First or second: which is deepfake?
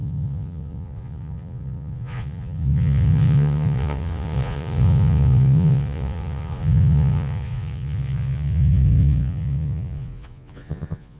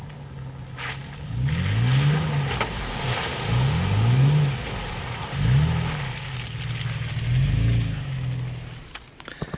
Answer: first